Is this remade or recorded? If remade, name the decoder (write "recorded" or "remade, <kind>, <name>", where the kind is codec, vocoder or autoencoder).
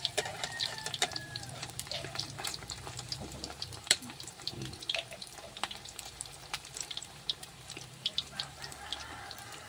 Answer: remade, vocoder, BigVGAN v2